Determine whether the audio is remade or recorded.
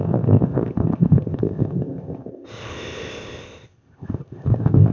remade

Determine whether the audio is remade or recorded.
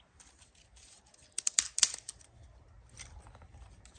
recorded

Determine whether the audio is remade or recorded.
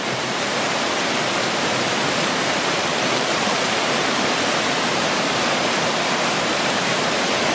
remade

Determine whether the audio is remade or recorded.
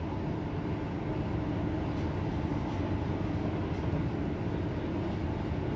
recorded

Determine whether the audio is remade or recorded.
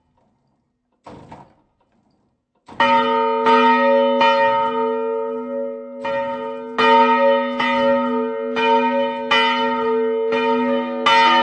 recorded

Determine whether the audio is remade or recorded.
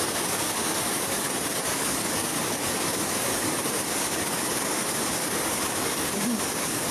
remade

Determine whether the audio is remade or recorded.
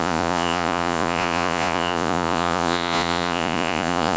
remade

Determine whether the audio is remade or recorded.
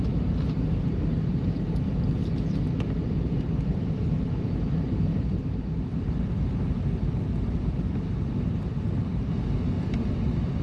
recorded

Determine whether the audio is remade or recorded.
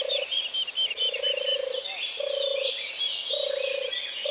recorded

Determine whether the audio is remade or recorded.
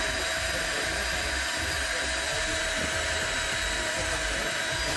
remade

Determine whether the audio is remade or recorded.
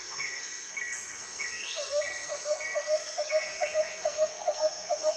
remade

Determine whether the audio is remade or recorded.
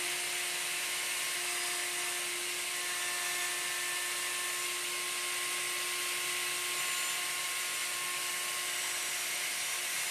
recorded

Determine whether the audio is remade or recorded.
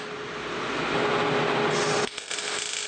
recorded